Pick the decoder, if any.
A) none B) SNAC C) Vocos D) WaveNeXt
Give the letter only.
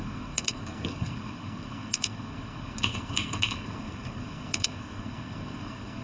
B